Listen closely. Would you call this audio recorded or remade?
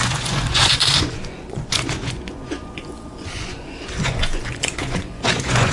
remade